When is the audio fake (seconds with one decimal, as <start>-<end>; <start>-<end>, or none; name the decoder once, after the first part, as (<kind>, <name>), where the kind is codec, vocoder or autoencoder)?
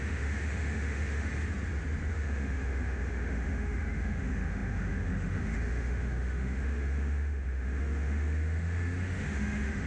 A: 0.0-1.3 (autoencoder, DAC-VAE); 2.1-9.9